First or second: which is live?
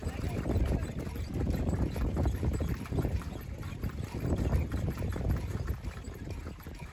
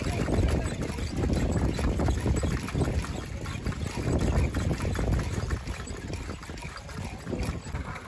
second